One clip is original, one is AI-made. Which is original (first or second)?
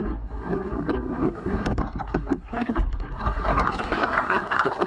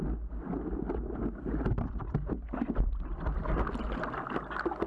second